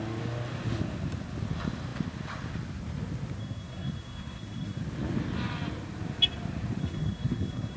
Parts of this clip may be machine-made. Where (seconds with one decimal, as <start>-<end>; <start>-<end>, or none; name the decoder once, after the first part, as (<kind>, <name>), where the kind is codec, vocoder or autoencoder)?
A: 3.4-4.8 (codec, SNAC); 6.8-7.8